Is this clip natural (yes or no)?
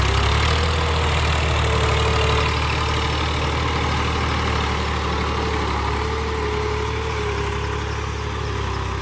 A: yes